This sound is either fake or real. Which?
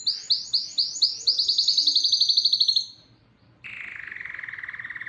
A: real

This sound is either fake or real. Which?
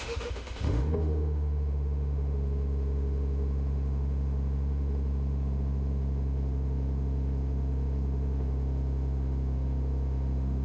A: fake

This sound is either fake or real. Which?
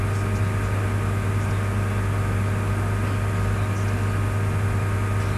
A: real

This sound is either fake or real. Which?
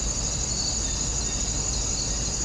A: real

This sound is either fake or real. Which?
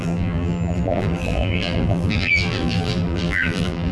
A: fake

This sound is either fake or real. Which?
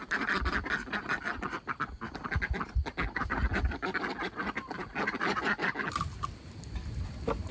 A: real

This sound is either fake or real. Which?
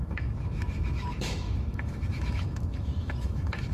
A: fake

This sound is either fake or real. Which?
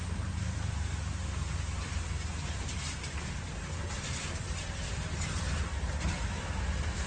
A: real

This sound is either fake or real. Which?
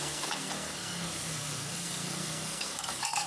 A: fake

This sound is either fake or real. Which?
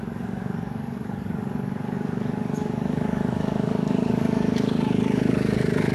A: fake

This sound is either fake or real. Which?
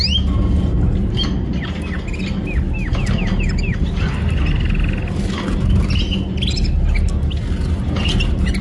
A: real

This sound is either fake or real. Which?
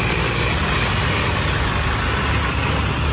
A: real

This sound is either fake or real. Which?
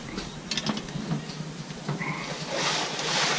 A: real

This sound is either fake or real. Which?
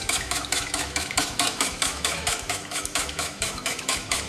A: fake